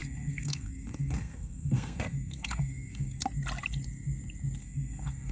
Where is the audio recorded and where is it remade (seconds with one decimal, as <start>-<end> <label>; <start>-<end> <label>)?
0.0-3.2 remade; 3.2-4.6 recorded; 4.6-5.3 remade

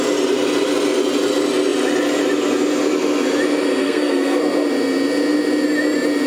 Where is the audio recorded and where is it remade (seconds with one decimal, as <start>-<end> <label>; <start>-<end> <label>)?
0.0-3.8 recorded; 3.8-4.4 remade; 4.4-6.3 recorded

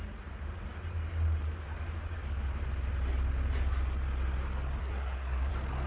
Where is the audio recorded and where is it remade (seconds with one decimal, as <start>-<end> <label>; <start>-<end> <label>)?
0.0-4.8 recorded; 4.8-5.5 remade; 5.5-5.9 recorded

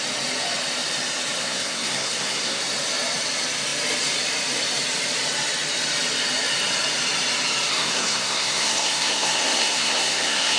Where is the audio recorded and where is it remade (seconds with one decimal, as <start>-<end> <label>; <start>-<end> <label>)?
0.0-1.4 recorded; 1.4-2.6 remade; 2.6-7.7 recorded; 7.7-10.6 remade

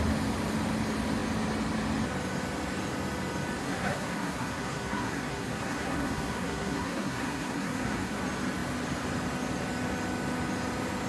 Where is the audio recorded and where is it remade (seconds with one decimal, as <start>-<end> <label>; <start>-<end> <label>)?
0.0-3.6 recorded; 3.6-8.2 remade; 8.2-11.1 recorded

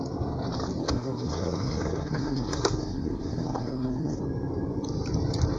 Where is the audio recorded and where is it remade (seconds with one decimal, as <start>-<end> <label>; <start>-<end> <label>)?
0.0-0.8 recorded; 0.8-4.2 remade; 4.2-5.6 recorded